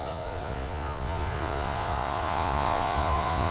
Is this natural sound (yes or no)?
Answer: no